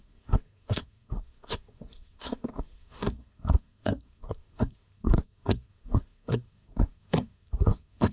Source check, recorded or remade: remade